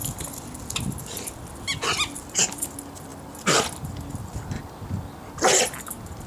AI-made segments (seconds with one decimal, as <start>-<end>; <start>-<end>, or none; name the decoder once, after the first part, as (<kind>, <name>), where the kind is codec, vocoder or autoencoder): none